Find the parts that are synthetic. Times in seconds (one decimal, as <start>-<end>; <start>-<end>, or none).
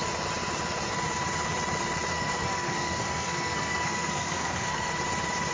2.1-4.9